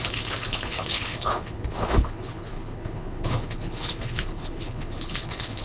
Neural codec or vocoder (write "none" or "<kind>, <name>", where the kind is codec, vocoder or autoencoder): codec, HILCodec